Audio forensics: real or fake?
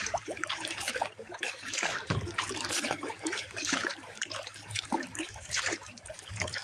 fake